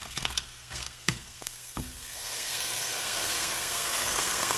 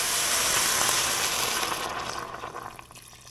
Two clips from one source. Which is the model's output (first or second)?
first